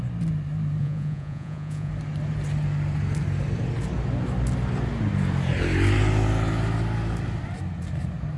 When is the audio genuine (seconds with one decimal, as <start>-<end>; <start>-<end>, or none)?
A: 0.0-0.8; 1.9-8.4